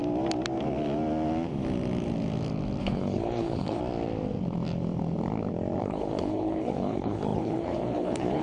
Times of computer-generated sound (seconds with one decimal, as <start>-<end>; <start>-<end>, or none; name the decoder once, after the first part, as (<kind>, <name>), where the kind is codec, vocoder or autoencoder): 2.8-3.8 (codec, HILCodec); 5.8-8.4